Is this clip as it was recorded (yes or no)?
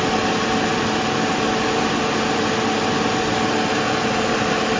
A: yes